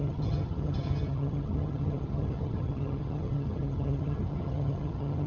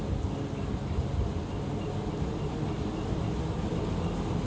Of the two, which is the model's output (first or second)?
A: first